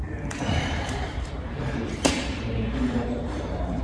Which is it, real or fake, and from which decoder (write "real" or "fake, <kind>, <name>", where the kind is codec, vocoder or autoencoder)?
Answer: fake, vocoder, BigVGAN v2